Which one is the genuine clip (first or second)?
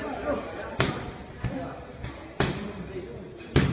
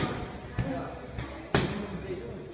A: second